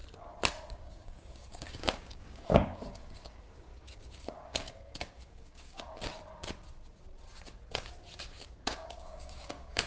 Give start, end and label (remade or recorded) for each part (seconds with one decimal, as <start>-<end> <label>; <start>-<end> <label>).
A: 0.0-0.7 recorded; 0.7-6.1 remade; 6.1-8.2 recorded; 8.2-9.9 remade